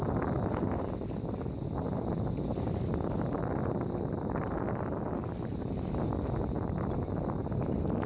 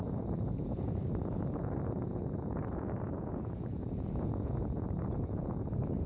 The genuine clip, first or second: first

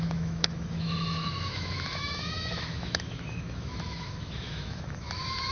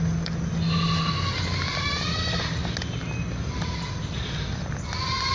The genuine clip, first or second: second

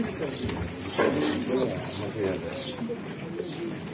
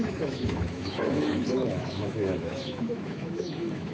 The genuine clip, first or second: first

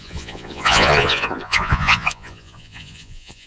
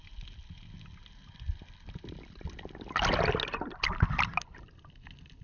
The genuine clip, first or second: second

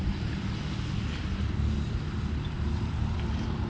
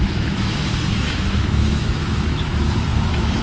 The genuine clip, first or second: first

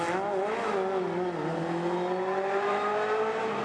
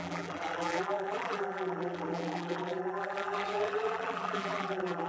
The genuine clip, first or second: first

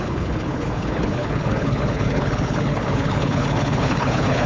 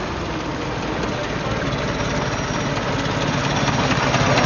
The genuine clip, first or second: second